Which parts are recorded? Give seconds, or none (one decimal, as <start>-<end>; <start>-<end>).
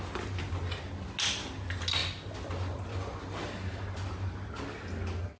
0.0-5.4